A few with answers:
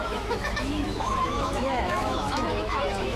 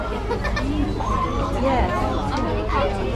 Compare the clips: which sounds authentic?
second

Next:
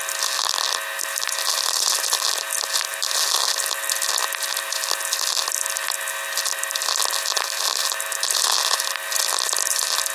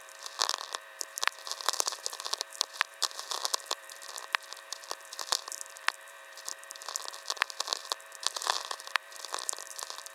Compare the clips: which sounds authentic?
first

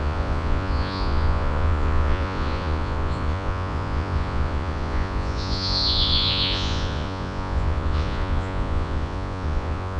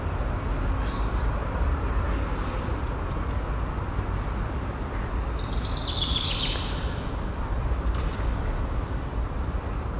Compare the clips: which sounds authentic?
second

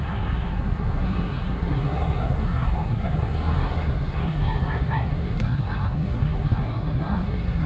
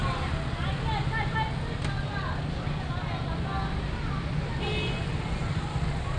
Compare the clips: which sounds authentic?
second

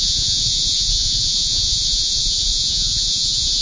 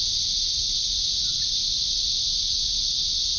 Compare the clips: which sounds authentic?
second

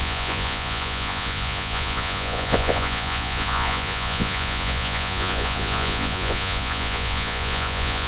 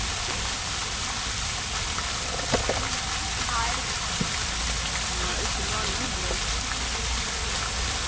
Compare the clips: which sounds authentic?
second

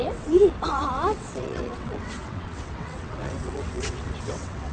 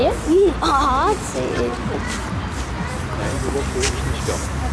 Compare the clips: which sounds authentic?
second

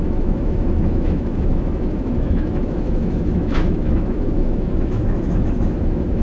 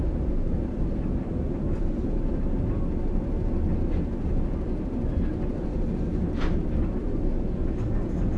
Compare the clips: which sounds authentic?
second